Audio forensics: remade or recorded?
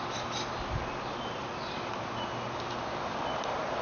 recorded